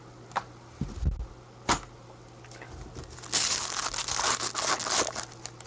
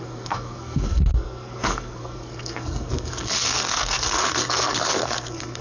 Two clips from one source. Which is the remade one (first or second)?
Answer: second